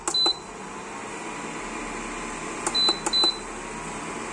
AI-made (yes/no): no